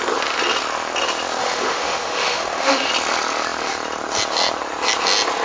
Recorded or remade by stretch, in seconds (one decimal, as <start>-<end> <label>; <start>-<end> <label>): 0.0-1.4 recorded; 1.4-2.9 remade; 2.9-5.4 recorded

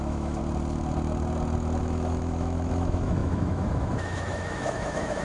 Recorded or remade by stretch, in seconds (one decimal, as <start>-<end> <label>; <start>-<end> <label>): 0.0-0.4 remade; 0.4-1.8 recorded; 1.8-5.2 remade

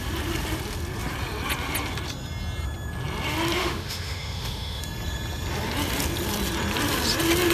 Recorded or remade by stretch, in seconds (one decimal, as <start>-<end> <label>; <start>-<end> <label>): 0.0-3.6 recorded; 3.6-4.8 remade; 4.8-7.5 recorded

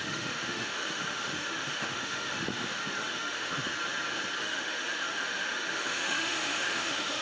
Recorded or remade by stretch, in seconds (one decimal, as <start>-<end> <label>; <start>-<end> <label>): 0.0-3.7 remade; 3.7-4.4 recorded; 4.4-7.2 remade

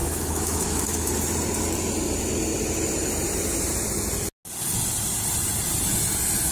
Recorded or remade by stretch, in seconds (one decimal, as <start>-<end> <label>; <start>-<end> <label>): 0.0-1.1 remade; 1.1-6.5 recorded